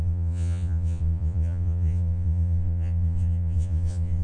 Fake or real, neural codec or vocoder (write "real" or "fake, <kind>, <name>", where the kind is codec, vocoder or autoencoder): fake, vocoder, Vocos